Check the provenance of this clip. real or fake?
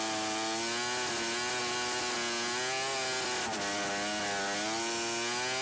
real